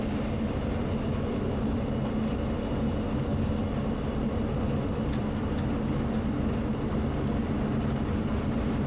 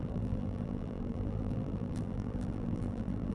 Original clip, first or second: first